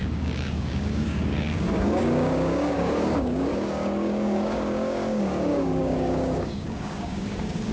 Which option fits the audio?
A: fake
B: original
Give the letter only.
A